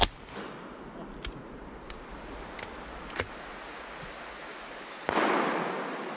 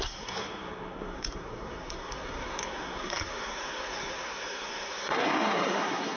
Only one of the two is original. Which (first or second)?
first